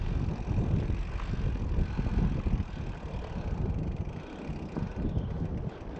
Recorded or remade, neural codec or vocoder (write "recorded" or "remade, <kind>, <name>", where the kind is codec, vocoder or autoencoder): recorded